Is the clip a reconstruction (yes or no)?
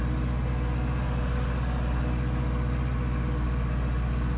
no